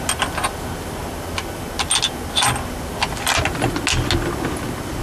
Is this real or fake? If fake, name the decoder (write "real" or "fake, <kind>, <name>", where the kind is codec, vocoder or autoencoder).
real